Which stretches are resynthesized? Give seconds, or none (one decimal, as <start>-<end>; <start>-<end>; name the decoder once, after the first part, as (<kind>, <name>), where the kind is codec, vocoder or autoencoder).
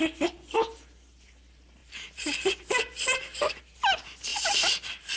1.8-3.6 (vocoder, BigVGAN v2); 4.3-5.2